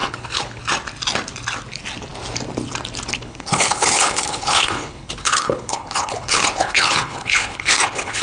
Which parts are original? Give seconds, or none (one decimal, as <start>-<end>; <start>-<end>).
0.6-3.1